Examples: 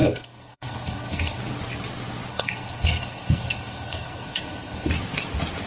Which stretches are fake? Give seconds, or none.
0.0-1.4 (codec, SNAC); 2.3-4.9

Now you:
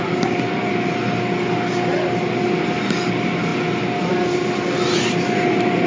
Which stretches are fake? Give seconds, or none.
none